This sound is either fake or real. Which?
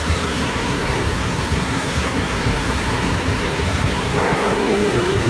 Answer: fake